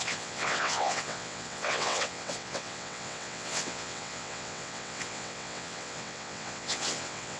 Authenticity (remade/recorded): remade